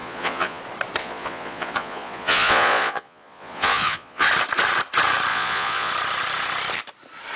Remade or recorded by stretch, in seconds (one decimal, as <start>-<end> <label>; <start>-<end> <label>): 0.0-0.6 remade; 0.6-1.0 recorded; 1.0-4.3 remade; 4.3-5.3 recorded; 5.3-5.9 remade; 5.9-7.4 recorded